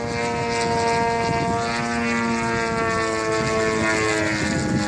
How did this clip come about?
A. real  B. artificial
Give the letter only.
A